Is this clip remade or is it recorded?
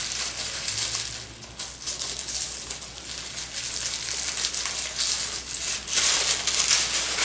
recorded